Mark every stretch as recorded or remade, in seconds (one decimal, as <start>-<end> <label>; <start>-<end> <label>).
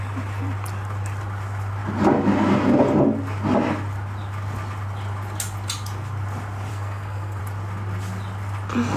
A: 0.0-6.7 recorded; 6.7-7.4 remade; 7.4-9.0 recorded